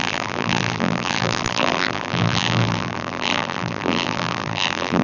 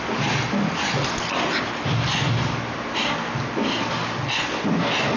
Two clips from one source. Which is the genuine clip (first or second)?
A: second